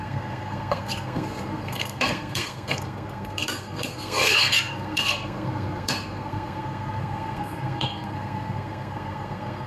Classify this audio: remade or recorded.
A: remade